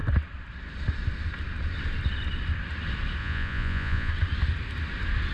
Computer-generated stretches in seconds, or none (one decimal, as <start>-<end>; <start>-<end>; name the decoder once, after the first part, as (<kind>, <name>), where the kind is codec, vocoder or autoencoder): 3.2-4.1 (vocoder, Vocos)